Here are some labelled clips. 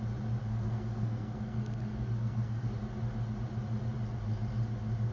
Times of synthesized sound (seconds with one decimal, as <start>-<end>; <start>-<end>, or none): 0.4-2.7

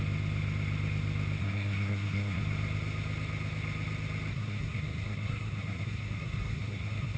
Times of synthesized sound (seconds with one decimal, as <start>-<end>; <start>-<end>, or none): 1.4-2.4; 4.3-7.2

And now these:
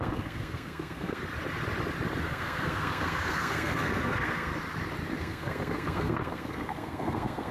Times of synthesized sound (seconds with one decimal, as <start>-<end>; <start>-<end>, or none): 0.0-1.2; 2.2-4.5; 5.2-7.5

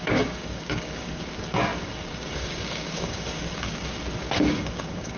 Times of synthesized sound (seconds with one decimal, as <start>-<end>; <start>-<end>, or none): 0.0-5.2

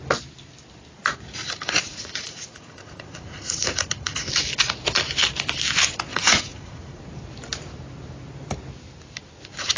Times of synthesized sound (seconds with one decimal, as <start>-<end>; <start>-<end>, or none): 1.4-4.3; 6.1-7.0

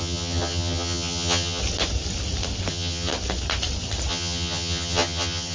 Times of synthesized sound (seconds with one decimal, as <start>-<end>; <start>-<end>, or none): 0.0-1.6; 2.7-3.1; 4.1-5.5